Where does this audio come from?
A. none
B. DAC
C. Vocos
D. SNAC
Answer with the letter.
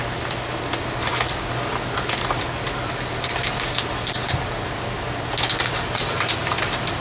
A